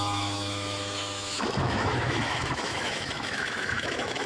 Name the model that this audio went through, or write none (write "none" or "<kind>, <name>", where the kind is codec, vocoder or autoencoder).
autoencoder, DAC-VAE